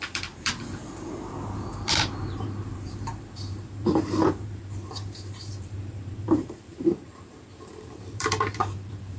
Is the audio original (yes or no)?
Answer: no